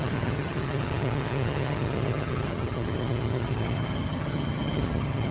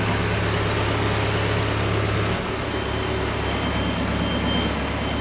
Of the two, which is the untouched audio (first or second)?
second